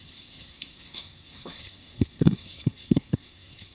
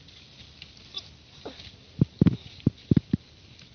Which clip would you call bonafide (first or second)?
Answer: second